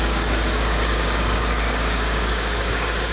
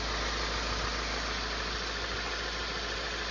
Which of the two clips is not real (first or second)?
first